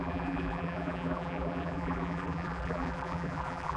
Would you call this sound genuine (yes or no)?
no